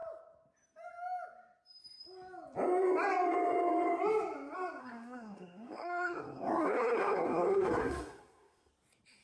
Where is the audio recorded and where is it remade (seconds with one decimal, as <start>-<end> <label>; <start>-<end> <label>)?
0.0-4.8 recorded; 4.8-8.7 remade; 8.7-9.2 recorded